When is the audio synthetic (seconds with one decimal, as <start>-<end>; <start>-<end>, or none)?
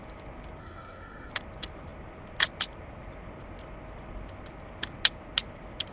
0.6-1.3